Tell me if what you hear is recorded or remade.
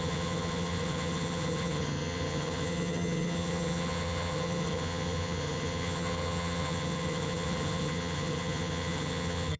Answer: remade